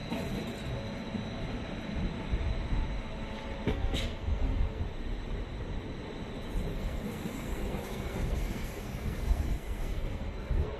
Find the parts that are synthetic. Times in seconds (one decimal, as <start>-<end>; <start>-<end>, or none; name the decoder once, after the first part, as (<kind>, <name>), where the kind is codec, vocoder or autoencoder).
3.7-4.8 (codec, SNAC); 6.7-10.8